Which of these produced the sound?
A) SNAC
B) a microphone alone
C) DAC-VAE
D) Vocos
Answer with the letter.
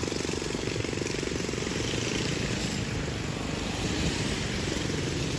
B